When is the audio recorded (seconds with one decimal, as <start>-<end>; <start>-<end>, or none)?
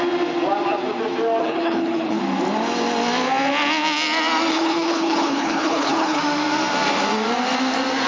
0.0-1.4; 2.2-4.5; 6.2-8.1